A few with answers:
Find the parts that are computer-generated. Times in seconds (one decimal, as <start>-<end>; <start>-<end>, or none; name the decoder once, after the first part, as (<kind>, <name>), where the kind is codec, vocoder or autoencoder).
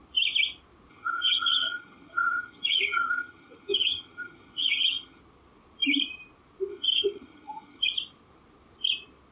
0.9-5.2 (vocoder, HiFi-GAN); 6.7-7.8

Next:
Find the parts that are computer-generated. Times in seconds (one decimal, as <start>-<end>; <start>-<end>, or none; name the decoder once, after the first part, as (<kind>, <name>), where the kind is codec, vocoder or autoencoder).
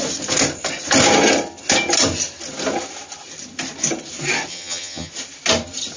4.5-5.1 (vocoder, HiFi-GAN)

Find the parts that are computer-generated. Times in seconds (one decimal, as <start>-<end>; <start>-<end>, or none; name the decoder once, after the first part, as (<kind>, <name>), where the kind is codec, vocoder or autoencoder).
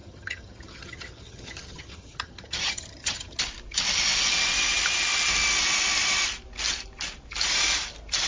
0.0-3.4 (vocoder, HiFi-GAN)